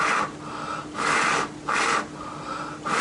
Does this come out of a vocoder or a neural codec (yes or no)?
no